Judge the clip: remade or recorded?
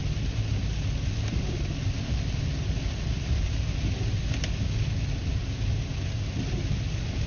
recorded